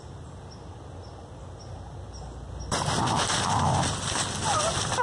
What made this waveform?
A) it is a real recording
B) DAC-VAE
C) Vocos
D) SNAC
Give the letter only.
A